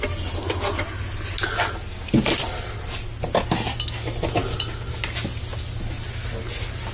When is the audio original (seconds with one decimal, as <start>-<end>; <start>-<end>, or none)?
0.0-6.9